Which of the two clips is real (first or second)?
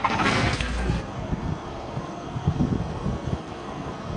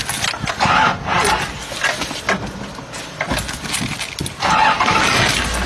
second